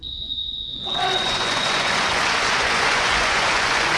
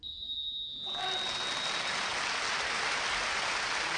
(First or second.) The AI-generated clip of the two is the first